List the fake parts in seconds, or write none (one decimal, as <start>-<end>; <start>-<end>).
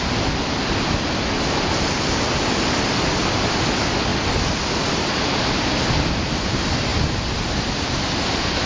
none